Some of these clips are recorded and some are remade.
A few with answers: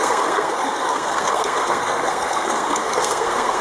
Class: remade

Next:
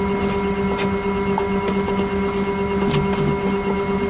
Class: remade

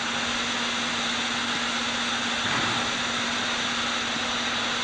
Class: recorded